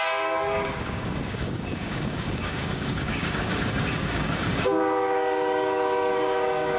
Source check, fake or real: fake